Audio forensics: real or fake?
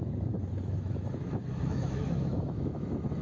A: fake